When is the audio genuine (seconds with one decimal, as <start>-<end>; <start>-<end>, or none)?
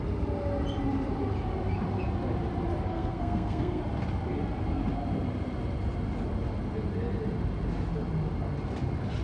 0.0-2.9; 3.8-9.2